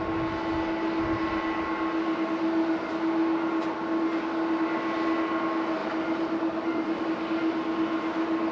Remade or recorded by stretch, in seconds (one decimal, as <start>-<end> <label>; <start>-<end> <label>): 0.0-5.8 recorded; 5.8-7.0 remade; 7.0-8.5 recorded